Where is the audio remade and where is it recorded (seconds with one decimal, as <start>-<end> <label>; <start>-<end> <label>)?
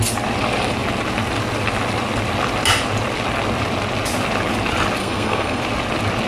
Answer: 0.0-5.0 recorded; 5.0-5.6 remade; 5.6-6.3 recorded